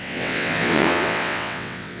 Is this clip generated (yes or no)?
yes